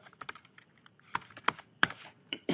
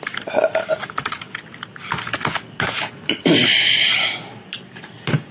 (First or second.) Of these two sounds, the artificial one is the first